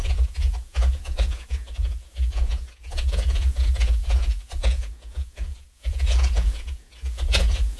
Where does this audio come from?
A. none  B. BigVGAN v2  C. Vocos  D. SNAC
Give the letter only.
C